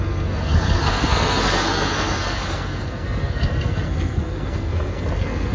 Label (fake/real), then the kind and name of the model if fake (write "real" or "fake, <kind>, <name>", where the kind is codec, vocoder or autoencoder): fake, codec, SNAC